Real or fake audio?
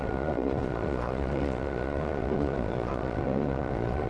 fake